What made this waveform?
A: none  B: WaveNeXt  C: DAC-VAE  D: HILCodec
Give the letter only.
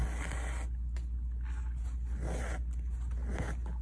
A